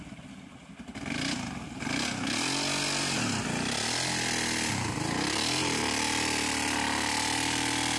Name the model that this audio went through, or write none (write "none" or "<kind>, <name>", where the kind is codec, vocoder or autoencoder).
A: none